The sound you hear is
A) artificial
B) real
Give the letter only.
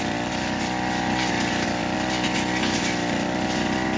B